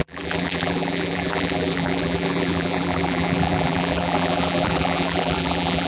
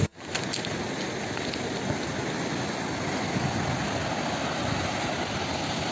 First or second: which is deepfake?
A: first